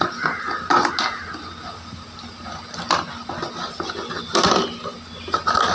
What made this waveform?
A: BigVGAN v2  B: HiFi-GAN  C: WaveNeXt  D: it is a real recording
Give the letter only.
D